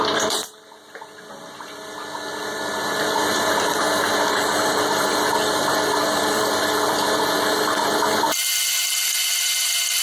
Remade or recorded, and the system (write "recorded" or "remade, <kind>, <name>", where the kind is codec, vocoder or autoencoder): remade, vocoder, BigVGAN v2